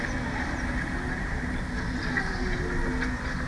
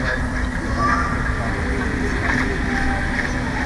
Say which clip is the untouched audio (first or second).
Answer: first